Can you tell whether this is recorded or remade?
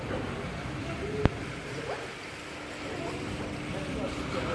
recorded